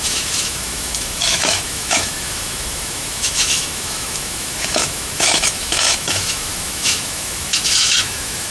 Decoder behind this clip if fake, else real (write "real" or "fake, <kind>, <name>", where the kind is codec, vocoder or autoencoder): fake, autoencoder, DAC-VAE